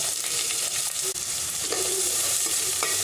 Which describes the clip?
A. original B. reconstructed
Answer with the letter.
B